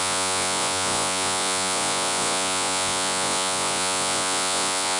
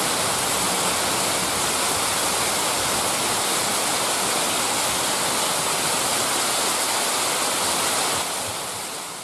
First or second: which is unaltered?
second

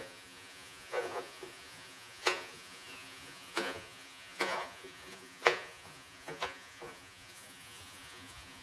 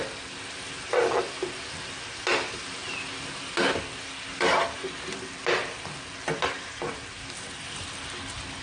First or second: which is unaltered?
second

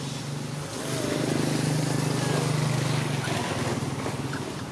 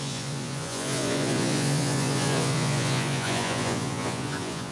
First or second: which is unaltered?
first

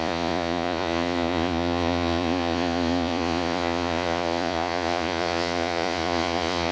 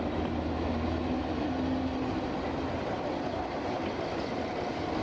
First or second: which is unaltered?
second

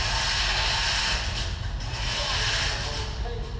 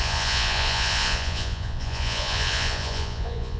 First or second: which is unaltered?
first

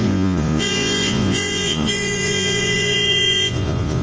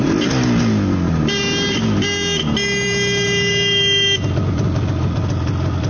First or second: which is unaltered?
second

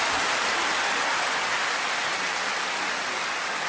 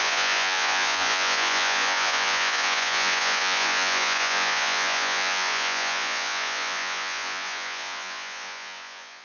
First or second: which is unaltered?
first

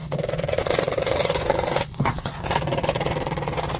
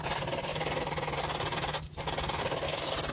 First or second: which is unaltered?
second